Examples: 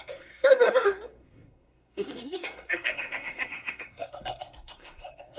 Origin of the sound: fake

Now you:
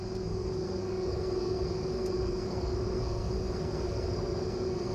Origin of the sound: fake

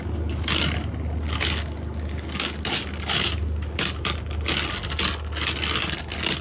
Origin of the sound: real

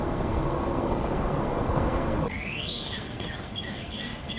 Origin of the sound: fake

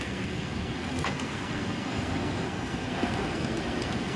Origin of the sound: fake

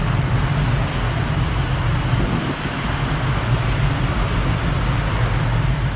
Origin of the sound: real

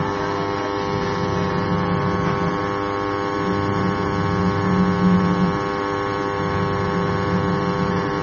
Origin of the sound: real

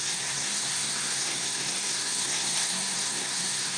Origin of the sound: fake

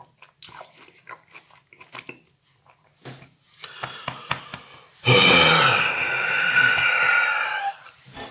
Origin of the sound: real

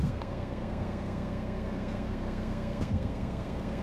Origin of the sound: fake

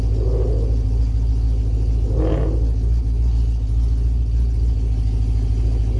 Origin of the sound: real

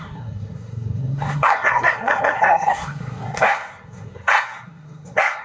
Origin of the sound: fake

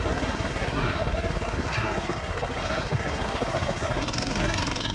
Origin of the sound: fake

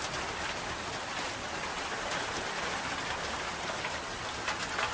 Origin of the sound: real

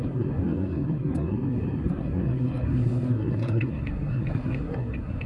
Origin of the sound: fake